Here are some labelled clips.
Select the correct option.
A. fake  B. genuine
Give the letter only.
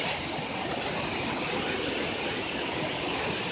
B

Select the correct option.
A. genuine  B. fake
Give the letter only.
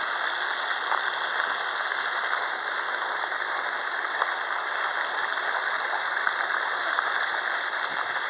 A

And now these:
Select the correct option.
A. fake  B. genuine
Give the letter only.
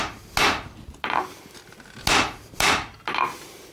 B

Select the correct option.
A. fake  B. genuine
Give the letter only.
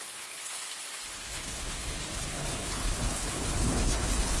A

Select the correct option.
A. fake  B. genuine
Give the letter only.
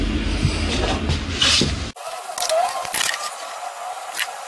B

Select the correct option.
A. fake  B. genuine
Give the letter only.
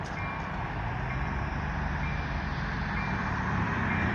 B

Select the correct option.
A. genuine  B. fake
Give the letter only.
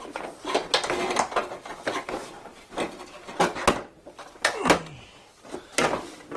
A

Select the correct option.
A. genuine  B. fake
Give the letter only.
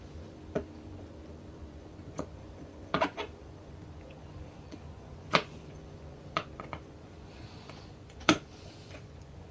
B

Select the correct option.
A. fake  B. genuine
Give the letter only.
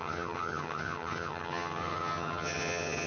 A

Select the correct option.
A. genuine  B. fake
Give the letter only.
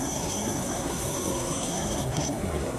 B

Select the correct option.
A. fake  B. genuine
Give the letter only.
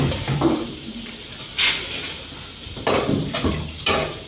B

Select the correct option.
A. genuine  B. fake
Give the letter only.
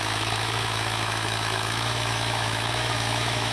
B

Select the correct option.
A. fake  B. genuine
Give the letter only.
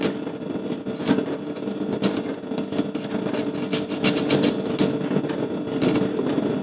B